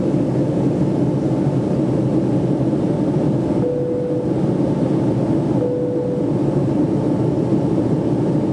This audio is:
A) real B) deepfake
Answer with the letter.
A